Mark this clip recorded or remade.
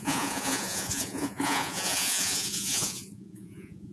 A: remade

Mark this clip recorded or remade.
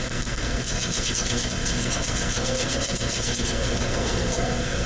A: remade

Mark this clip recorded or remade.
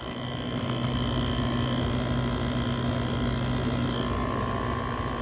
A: recorded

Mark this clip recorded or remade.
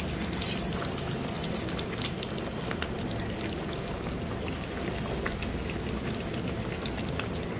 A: recorded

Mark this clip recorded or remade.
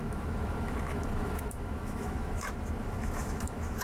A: remade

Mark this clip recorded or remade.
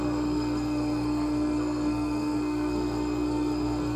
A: remade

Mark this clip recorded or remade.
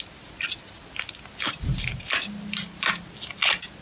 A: recorded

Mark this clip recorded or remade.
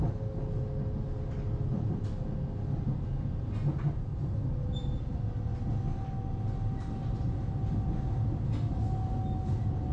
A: recorded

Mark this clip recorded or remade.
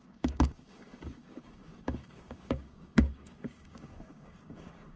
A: remade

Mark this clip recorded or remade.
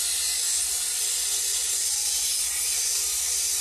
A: recorded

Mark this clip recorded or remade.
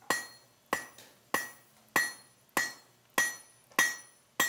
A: recorded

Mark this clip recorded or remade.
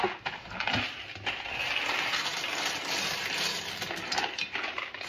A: recorded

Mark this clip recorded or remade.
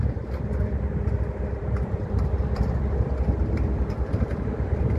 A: remade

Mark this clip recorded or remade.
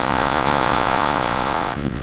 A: remade